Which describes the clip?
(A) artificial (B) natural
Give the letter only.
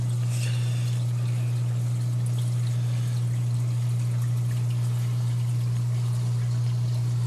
A